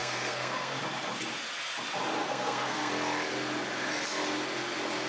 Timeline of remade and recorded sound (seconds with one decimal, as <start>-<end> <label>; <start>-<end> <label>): 0.0-0.8 remade; 0.8-2.2 recorded; 2.2-2.9 remade; 2.9-5.1 recorded